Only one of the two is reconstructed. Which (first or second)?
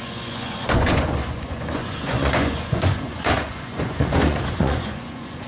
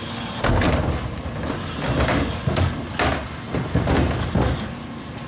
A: first